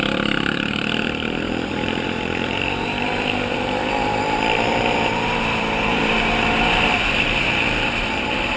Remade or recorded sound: remade